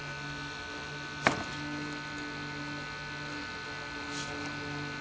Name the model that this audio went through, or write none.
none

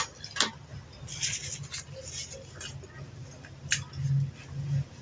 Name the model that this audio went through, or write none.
none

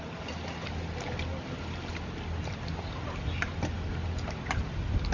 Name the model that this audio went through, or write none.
none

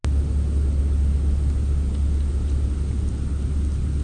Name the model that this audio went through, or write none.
none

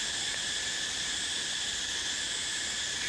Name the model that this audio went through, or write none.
none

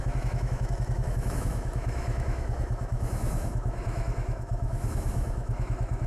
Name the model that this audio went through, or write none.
autoencoder, DAC-VAE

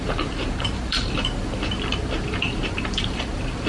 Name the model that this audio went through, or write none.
vocoder, BigVGAN v2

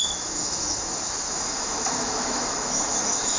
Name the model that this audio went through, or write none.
autoencoder, DAC-VAE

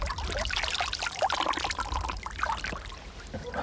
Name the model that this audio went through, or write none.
none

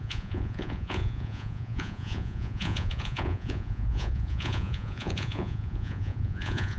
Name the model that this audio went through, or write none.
vocoder, Vocos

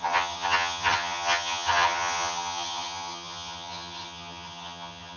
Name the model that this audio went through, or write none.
vocoder, HiFi-GAN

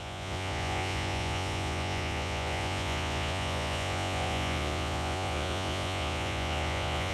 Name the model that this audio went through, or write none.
vocoder, Vocos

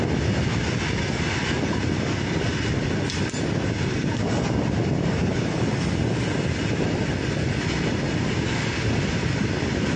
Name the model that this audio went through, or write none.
none